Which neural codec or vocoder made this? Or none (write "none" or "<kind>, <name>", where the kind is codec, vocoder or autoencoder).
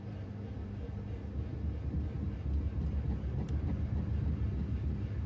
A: none